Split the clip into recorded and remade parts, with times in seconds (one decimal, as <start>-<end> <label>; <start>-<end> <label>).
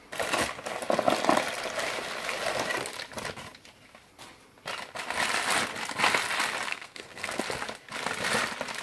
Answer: 0.0-6.7 recorded; 6.7-7.4 remade; 7.4-8.8 recorded